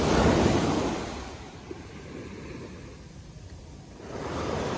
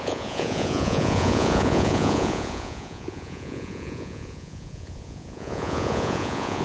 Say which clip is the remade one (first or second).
second